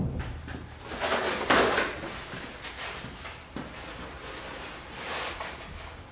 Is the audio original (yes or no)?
yes